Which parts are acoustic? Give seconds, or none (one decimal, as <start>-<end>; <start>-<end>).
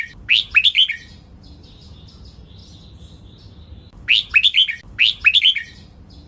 0.0-6.3